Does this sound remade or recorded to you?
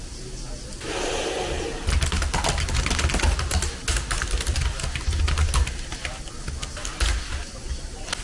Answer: recorded